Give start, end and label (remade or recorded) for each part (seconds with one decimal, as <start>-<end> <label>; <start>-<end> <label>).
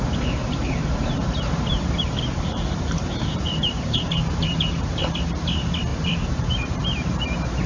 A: 0.0-0.4 recorded; 0.4-5.0 remade; 5.0-5.9 recorded; 5.9-6.8 remade; 6.8-7.7 recorded